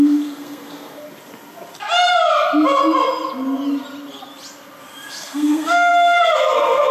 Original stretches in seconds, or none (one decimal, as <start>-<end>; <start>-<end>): 1.0-5.1